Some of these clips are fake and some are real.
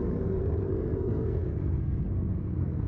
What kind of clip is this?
fake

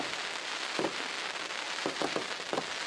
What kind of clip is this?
real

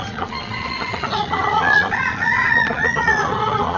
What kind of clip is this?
fake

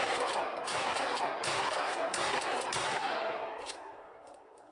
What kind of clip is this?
fake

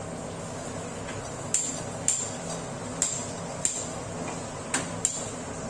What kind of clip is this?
real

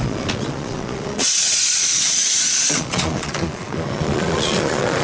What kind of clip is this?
fake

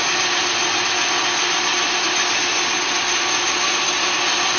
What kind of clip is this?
real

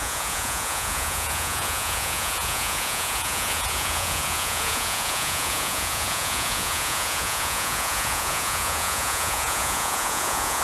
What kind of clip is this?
fake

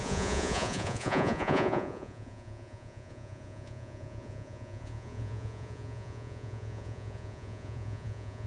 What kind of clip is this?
fake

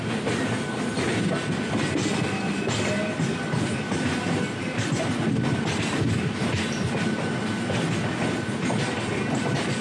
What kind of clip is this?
real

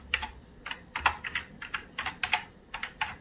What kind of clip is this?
real